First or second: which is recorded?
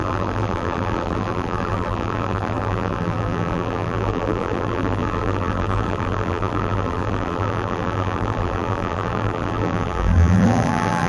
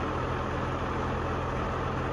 second